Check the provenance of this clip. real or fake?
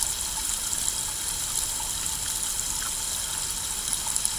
real